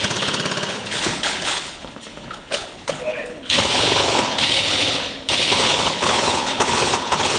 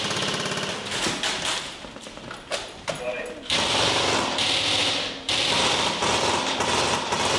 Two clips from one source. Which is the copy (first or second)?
first